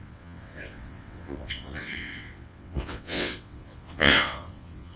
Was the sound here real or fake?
fake